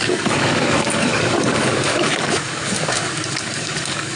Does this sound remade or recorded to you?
remade